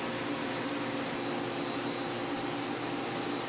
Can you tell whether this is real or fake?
real